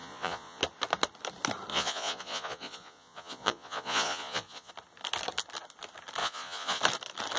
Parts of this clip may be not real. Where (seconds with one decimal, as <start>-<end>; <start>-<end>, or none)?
0.0-0.6; 1.7-4.7; 6.2-6.8